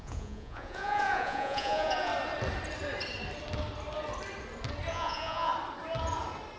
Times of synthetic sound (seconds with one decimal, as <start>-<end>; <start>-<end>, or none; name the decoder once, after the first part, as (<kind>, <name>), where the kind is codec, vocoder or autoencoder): 0.0-2.1 (vocoder, Vocos); 4.9-5.5